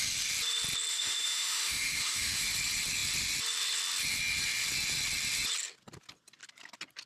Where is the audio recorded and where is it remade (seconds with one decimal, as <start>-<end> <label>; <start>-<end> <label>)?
0.0-0.9 recorded; 0.9-2.4 remade; 2.4-7.1 recorded